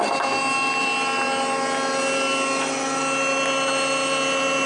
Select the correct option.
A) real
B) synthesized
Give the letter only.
A